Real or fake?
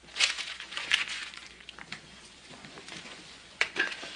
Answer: fake